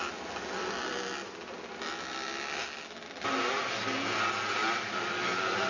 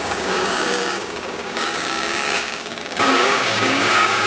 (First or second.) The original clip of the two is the first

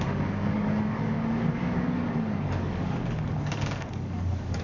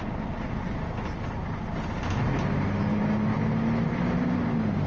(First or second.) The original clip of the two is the second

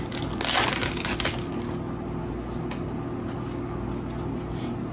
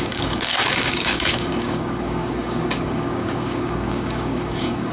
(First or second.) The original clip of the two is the first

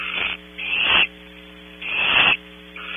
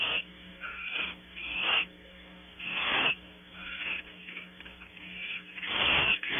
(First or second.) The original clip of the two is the first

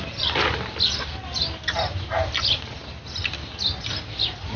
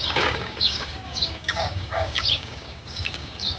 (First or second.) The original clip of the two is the first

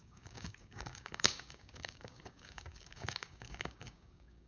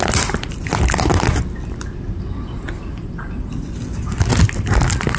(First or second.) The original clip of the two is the second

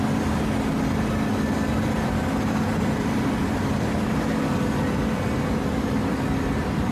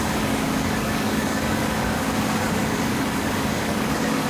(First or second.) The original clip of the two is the first